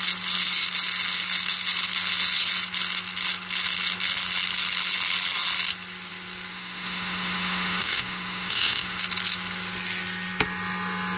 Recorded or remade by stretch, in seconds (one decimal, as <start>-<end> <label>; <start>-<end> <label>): 0.0-6.5 recorded; 6.5-9.0 remade; 9.0-11.2 recorded